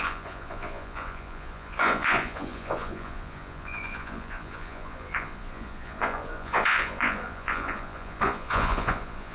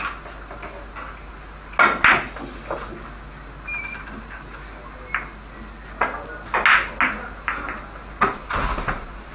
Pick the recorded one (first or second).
second